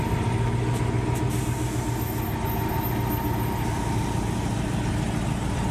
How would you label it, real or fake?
real